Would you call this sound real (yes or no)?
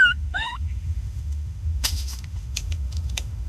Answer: no